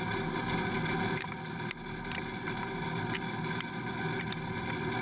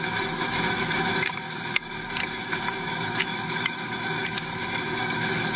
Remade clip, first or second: second